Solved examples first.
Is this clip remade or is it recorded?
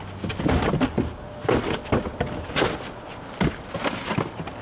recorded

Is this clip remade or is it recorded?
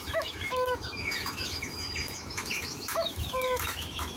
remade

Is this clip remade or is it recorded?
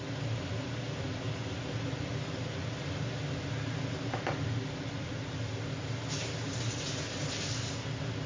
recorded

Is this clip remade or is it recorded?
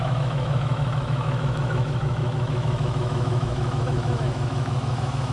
remade